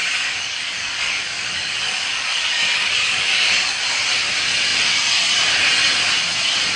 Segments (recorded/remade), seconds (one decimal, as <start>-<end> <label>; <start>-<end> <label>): 0.0-3.8 remade; 3.8-6.8 recorded